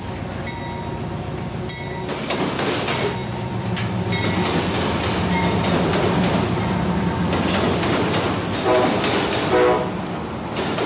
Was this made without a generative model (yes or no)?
yes